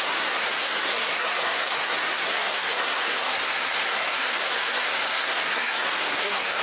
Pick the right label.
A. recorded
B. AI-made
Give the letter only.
B